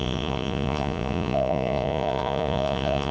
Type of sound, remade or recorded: remade